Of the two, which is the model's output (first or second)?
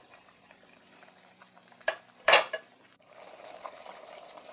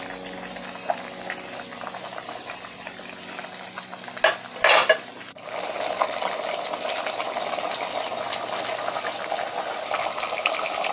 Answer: first